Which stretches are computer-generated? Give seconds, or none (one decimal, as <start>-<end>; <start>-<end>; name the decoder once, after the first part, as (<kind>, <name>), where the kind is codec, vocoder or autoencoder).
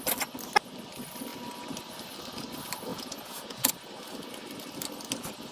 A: 2.9-3.7 (vocoder, Vocos)